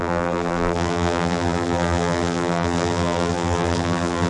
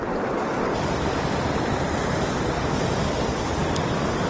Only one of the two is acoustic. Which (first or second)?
second